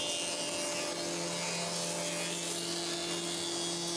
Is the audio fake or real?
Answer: real